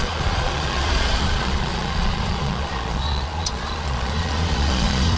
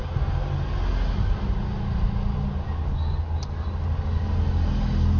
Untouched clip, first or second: second